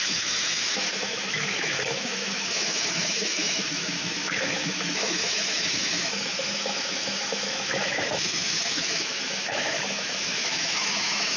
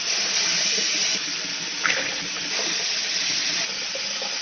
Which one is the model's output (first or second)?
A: first